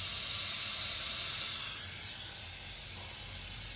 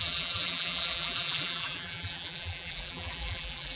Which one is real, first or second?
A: first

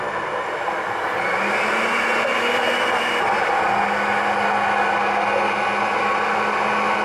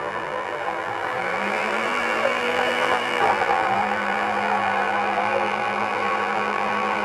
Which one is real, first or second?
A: first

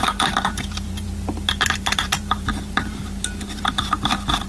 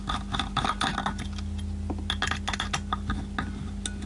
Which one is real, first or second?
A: second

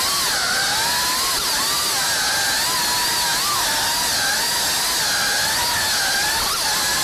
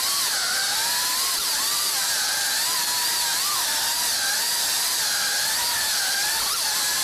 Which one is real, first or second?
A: first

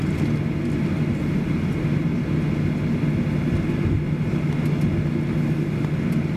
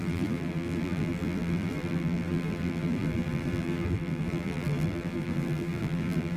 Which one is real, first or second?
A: first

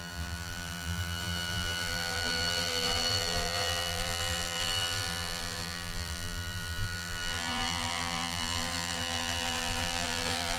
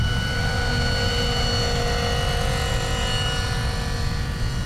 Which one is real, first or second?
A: second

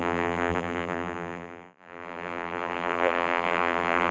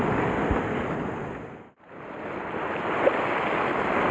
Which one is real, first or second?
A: second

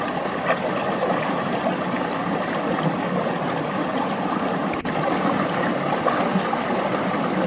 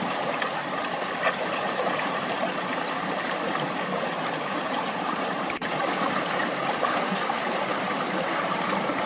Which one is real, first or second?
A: first